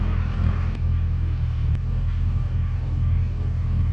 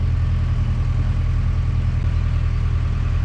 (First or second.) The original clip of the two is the second